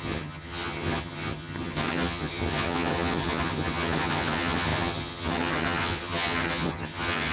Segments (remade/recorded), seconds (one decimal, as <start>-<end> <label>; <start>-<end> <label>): 0.0-7.3 remade